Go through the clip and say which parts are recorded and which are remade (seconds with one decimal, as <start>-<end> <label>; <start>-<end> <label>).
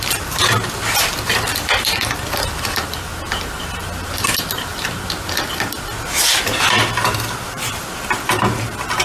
0.0-0.4 remade; 0.4-1.3 recorded; 1.3-3.1 remade; 3.1-6.4 recorded; 6.4-9.0 remade